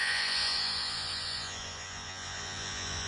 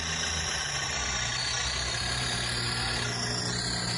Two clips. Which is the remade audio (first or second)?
first